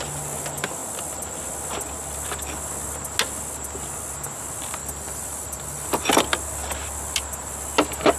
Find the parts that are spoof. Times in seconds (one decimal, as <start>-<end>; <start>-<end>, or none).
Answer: 4.8-6.0